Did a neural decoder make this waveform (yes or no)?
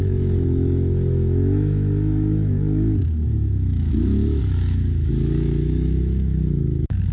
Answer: yes